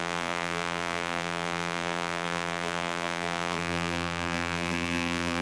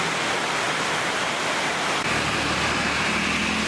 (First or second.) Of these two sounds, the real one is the second